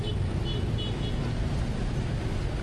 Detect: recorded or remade recorded